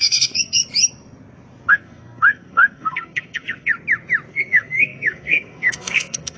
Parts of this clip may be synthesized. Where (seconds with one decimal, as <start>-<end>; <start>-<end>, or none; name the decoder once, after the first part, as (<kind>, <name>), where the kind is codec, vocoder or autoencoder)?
0.0-0.6 (codec, SNAC); 1.7-3.7; 4.3-6.4